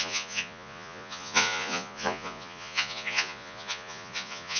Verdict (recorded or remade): remade